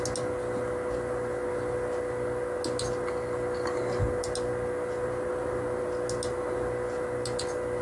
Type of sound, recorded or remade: recorded